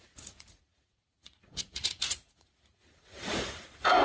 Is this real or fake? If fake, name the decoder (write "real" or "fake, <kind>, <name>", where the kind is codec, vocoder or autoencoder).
fake, vocoder, Vocos